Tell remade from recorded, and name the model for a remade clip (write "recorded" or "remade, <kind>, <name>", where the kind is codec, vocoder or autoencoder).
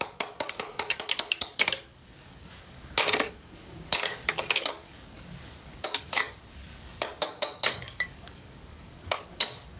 remade, codec, DAC